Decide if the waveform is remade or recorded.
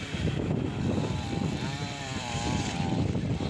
remade